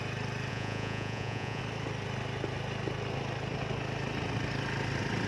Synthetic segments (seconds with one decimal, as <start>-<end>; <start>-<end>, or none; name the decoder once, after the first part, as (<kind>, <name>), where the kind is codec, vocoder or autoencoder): 0.5-1.6 (vocoder, Vocos)